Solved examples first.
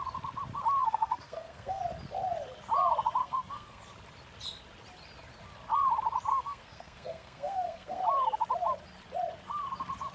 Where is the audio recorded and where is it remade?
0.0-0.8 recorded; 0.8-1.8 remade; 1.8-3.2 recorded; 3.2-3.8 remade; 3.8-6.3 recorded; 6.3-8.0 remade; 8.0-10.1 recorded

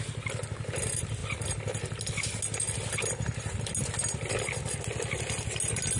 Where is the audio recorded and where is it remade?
0.0-6.0 recorded

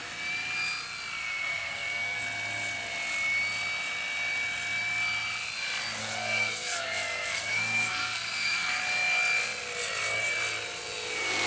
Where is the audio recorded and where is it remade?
0.0-1.2 recorded; 1.2-2.2 remade; 2.2-6.0 recorded; 6.0-8.8 remade; 8.8-11.5 recorded

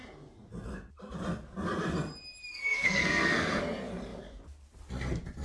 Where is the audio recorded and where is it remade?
0.0-2.5 recorded; 2.5-3.6 remade; 3.6-5.4 recorded

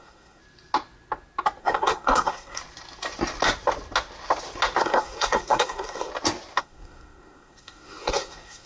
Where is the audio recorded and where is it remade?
0.0-0.4 remade; 0.4-1.6 recorded; 1.6-2.6 remade; 2.6-4.8 recorded; 4.8-6.1 remade; 6.1-6.6 recorded; 6.6-8.7 remade